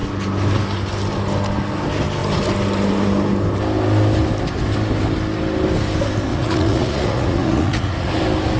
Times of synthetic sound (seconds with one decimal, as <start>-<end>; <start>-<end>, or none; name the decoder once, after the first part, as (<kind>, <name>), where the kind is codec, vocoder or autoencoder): 6.3-8.2 (vocoder, Vocos)